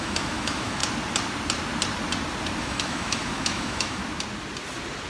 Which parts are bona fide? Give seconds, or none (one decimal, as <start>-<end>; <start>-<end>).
0.8-2.6; 4.0-5.1